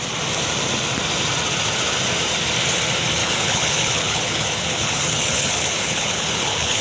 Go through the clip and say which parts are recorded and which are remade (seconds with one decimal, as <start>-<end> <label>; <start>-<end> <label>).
0.0-3.2 recorded; 3.2-6.8 remade